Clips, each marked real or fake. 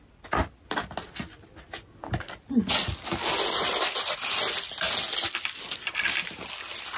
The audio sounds real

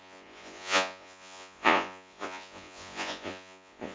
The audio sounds fake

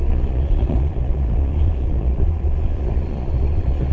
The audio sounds fake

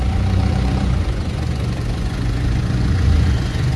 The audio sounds fake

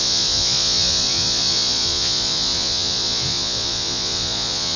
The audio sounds fake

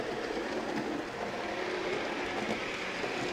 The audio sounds real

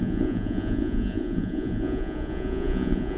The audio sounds fake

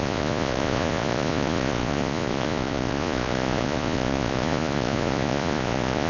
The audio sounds fake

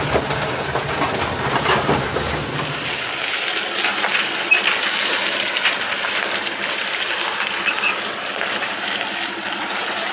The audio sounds real